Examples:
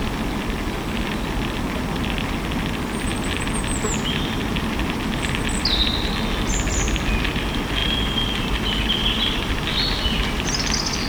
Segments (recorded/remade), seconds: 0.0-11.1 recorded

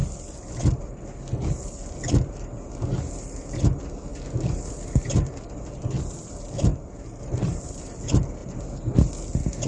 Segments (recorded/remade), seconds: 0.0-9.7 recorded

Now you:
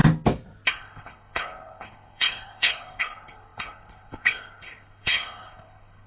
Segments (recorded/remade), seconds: 0.0-0.7 recorded; 0.7-6.1 remade

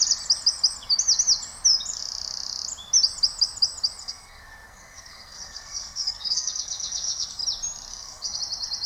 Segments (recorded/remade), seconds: 0.0-4.0 recorded; 4.0-7.4 remade; 7.4-7.9 recorded; 7.9-8.4 remade; 8.4-8.9 recorded

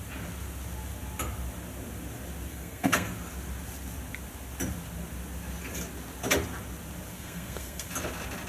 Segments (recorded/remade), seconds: 0.0-2.5 recorded; 2.5-3.1 remade; 3.1-7.1 recorded; 7.1-7.9 remade; 7.9-8.5 recorded